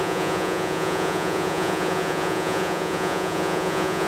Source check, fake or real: fake